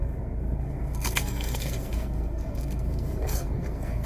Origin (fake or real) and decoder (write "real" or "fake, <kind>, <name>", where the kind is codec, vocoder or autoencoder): fake, codec, SNAC